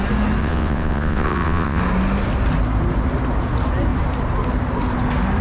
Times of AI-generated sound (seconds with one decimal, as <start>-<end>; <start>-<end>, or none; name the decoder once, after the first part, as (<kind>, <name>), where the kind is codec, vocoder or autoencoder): 0.4-1.8 (vocoder, WaveNeXt)